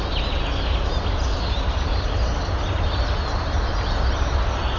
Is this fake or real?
real